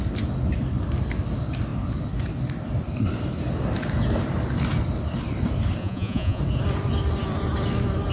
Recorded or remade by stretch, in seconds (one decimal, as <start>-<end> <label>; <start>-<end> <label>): 0.0-5.8 recorded; 5.8-6.4 remade; 6.4-8.1 recorded